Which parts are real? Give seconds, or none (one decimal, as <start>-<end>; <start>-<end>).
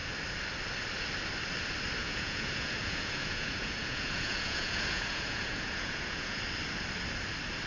0.0-2.0; 6.4-7.7